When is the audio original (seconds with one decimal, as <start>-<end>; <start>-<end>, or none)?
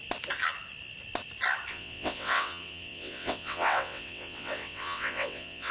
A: 0.0-1.7